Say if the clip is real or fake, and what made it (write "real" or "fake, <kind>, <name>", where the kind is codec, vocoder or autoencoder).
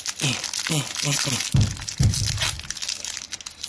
real